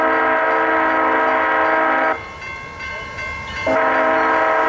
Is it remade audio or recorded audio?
recorded